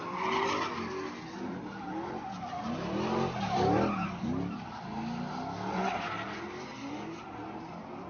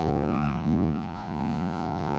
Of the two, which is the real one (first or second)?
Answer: first